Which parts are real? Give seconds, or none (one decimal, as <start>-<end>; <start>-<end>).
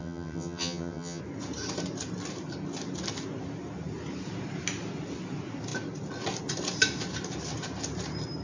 1.2-8.4